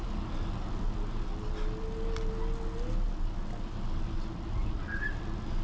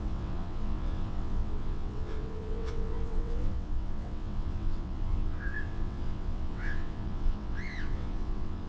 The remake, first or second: second